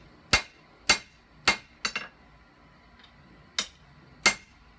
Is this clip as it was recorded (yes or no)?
yes